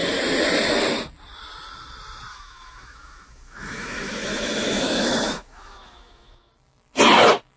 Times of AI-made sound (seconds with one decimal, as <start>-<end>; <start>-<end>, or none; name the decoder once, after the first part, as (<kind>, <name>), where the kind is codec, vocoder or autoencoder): 2.3-6.5 (autoencoder, DAC-VAE)